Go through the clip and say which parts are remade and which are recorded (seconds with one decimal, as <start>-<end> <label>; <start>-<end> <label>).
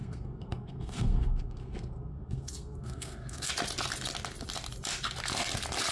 0.0-3.5 remade; 3.5-5.9 recorded